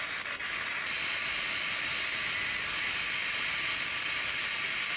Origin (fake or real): real